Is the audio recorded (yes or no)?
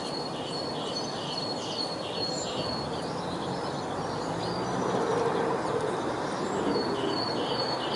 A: yes